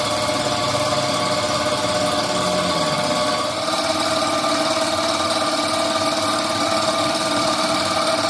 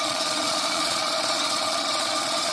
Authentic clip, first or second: first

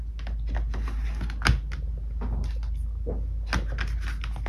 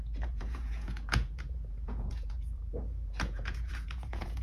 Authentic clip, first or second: first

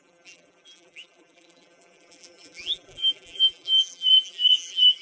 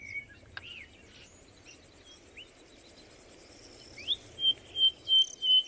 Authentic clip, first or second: second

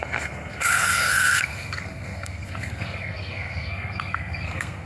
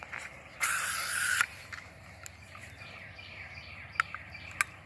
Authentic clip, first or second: second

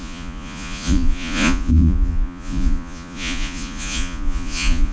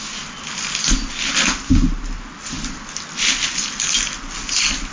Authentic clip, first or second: second